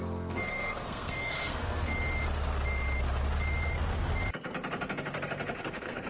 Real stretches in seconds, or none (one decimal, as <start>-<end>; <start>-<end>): 1.9-5.6